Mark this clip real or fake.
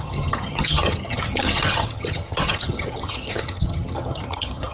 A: fake